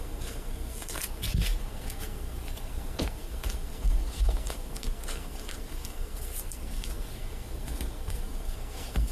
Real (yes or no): no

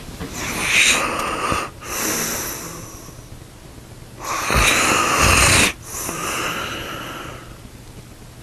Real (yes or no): yes